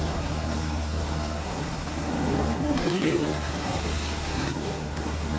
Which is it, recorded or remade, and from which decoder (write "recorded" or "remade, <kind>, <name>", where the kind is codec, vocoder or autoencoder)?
remade, codec, SNAC